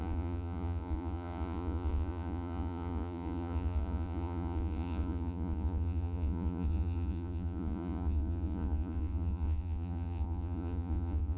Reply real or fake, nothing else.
fake